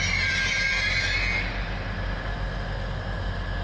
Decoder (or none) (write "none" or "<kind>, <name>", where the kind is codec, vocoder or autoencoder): none